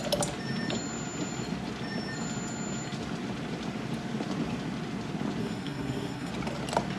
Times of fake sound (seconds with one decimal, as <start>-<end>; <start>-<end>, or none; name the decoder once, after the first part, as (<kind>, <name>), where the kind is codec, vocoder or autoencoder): 5.4-6.3 (codec, SNAC)